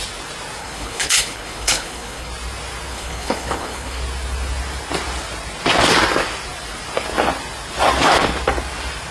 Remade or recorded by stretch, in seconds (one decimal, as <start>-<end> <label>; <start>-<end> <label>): 0.0-0.6 recorded; 0.6-2.3 remade; 2.3-2.9 recorded; 2.9-4.0 remade; 4.0-9.1 recorded